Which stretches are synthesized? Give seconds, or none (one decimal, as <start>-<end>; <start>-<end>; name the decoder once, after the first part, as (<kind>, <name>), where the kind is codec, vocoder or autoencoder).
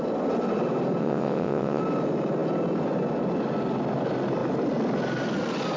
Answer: 1.0-1.8 (vocoder, WaveNeXt)